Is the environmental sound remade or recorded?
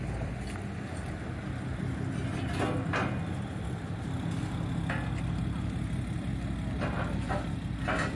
recorded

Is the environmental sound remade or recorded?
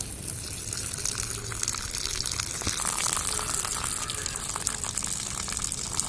recorded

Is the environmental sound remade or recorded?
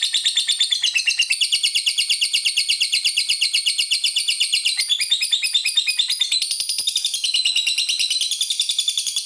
recorded